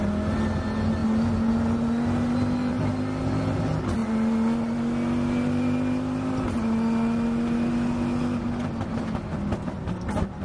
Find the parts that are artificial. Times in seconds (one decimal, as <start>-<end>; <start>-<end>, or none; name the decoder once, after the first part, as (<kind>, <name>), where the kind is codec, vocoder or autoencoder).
none